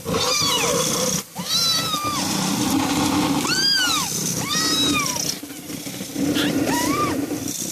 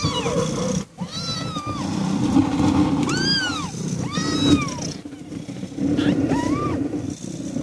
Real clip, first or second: second